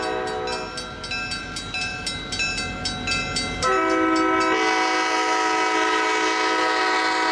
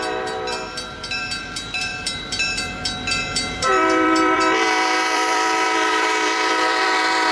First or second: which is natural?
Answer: first